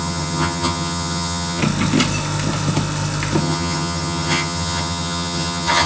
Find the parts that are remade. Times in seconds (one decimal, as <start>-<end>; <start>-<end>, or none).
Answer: 0.0-1.6; 3.4-5.9